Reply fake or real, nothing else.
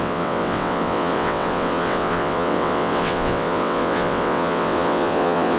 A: fake